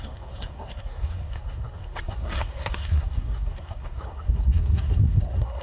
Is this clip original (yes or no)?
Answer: no